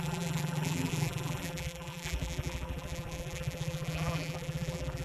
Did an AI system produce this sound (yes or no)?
yes